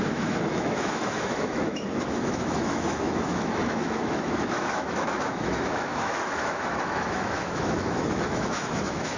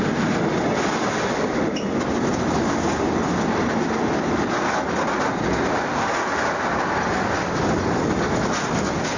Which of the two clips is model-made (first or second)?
first